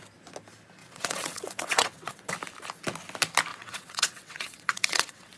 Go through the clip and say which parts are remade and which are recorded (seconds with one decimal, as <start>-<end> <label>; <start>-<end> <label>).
0.0-0.8 recorded; 0.8-2.3 remade; 2.3-3.5 recorded; 3.5-5.4 remade